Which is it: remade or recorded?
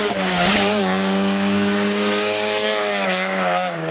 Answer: remade